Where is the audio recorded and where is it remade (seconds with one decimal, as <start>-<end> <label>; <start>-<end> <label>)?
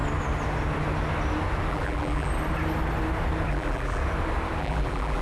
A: 0.0-1.7 recorded; 1.7-2.3 remade; 2.3-3.5 recorded; 3.5-4.0 remade; 4.0-4.6 recorded; 4.6-5.2 remade